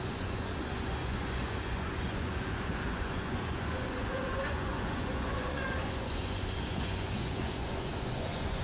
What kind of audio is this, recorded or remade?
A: remade